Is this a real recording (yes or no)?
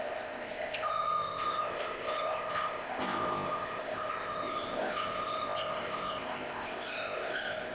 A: no